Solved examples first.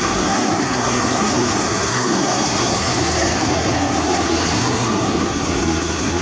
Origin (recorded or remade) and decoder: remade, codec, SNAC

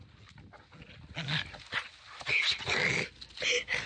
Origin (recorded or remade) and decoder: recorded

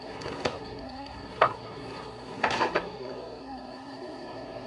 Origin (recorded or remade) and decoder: remade, codec, SNAC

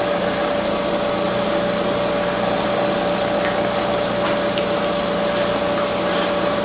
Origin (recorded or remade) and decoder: recorded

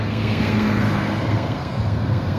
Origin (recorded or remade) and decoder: remade, codec, SNAC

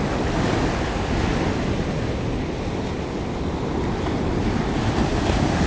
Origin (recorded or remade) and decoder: recorded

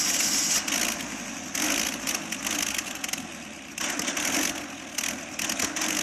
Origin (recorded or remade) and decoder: recorded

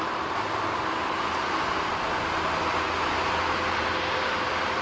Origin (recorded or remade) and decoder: recorded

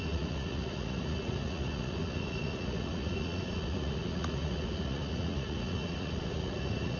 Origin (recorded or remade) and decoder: remade, vocoder, Vocos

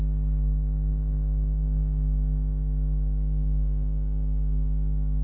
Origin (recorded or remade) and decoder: remade, codec, DAC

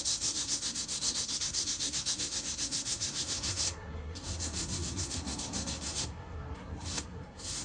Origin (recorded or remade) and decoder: remade, codec, SNAC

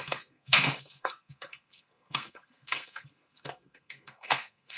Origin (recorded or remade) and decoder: remade, codec, SNAC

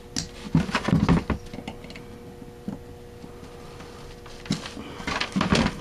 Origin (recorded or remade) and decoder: recorded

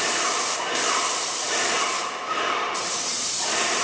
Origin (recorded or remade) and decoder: remade, vocoder, BigVGAN v2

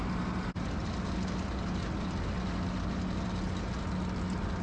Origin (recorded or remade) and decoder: recorded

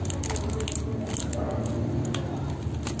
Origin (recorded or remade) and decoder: recorded